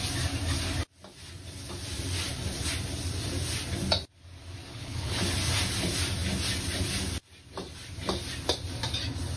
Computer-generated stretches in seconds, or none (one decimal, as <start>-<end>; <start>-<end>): 4.7-5.2